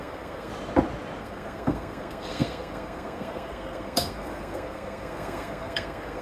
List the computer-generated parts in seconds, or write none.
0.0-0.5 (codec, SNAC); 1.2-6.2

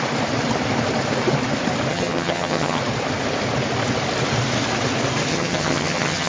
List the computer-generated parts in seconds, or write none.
1.9-2.8 (vocoder, HiFi-GAN); 5.3-6.3

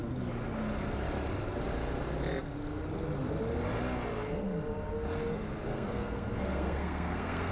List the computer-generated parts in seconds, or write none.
5.7-7.5 (codec, SNAC)

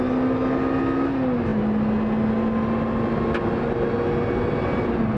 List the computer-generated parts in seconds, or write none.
none